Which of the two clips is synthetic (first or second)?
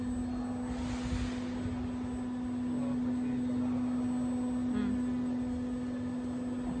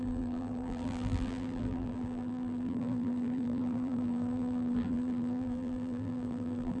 second